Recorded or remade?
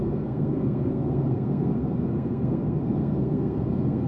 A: remade